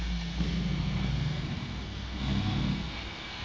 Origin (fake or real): fake